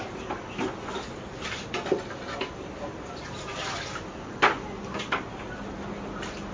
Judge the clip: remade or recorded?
recorded